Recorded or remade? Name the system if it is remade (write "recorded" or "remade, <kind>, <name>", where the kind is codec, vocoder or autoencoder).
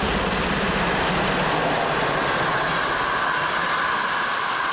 recorded